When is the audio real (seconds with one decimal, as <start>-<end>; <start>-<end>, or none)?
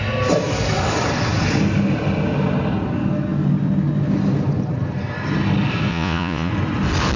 0.0-5.9; 6.5-7.2